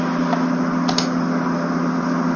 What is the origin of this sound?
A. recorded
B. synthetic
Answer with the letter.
A